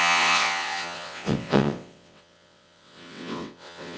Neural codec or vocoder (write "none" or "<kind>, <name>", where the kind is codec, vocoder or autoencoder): vocoder, WaveNeXt